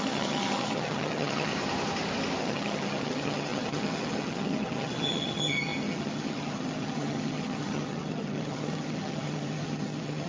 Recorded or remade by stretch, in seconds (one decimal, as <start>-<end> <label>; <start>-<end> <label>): 0.0-1.5 remade; 1.5-2.4 recorded; 2.4-10.3 remade